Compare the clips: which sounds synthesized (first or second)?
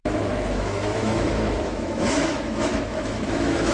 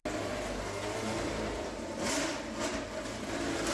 first